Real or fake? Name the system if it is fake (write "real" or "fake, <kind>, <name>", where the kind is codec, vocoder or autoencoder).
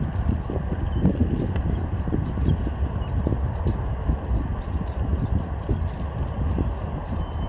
real